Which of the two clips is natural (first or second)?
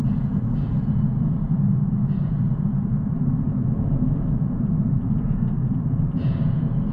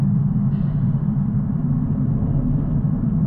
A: second